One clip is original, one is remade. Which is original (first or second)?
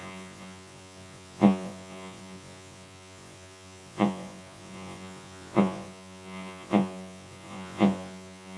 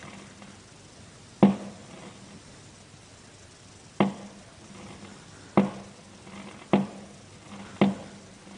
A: second